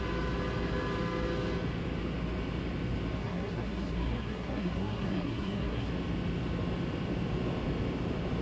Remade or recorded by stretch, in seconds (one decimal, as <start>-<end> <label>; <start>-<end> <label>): 0.0-3.2 recorded; 3.2-5.9 remade; 5.9-8.4 recorded